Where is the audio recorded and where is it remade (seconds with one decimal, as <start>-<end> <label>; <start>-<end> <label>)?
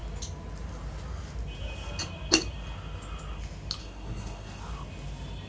0.0-3.8 recorded; 3.8-4.6 remade; 4.6-5.5 recorded